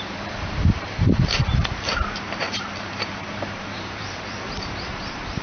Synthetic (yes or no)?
yes